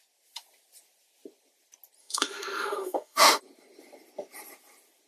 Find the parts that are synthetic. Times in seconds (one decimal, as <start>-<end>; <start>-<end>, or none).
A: 2.0-3.4